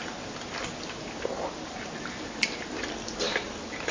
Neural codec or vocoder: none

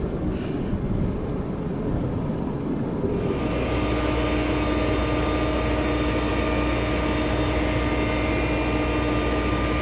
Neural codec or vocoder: none